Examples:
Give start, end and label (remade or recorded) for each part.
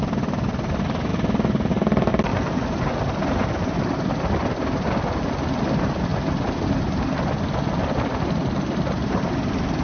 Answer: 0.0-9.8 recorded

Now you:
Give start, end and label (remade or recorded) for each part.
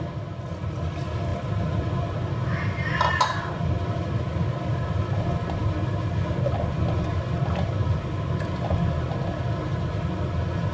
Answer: 0.0-10.7 recorded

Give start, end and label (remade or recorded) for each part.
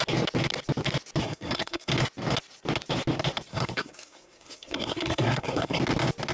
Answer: 0.0-1.2 recorded; 1.2-1.9 remade; 1.9-3.5 recorded; 3.5-5.8 remade; 5.8-6.3 recorded